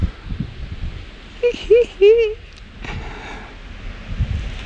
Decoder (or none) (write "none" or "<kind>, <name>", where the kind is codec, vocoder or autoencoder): none